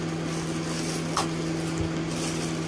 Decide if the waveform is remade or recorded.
recorded